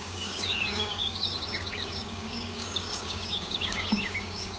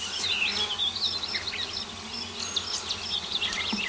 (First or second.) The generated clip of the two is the first